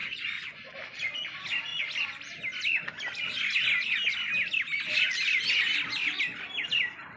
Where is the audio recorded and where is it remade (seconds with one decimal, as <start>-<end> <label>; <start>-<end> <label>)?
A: 0.0-0.7 remade; 0.7-7.2 recorded

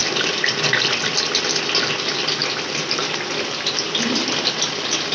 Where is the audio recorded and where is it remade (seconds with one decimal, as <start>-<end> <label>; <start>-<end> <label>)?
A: 0.0-5.1 recorded

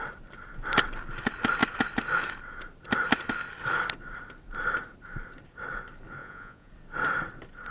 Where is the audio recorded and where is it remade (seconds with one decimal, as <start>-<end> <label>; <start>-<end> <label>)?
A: 0.0-6.2 recorded; 6.2-6.7 remade; 6.7-7.7 recorded

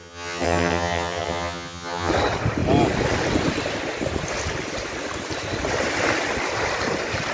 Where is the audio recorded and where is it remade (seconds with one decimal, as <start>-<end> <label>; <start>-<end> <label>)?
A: 0.0-2.1 remade; 2.1-7.3 recorded

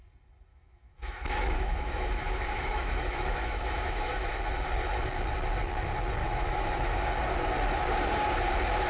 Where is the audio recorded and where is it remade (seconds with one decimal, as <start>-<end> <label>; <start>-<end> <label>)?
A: 0.0-0.5 recorded; 0.5-4.3 remade; 4.3-6.2 recorded; 6.2-7.0 remade; 7.0-8.9 recorded